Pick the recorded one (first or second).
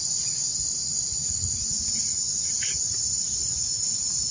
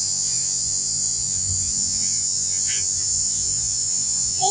first